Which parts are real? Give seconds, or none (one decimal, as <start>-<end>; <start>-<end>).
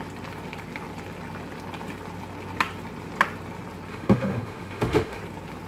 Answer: 0.0-3.9; 5.2-5.7